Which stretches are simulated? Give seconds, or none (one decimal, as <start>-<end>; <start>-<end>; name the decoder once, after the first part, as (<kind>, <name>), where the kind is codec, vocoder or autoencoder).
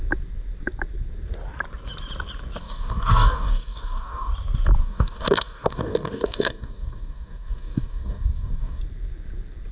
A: 2.6-4.3 (codec, DAC); 4.8-8.8